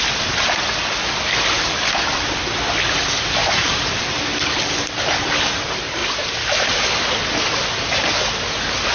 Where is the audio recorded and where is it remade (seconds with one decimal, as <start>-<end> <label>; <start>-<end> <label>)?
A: 0.0-3.4 recorded; 3.4-4.9 remade; 4.9-6.0 recorded; 6.0-7.0 remade; 7.0-8.9 recorded